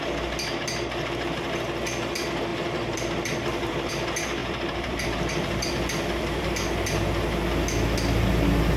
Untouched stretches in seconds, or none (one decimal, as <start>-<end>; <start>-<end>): 0.0-2.5; 3.9-4.4; 6.5-8.8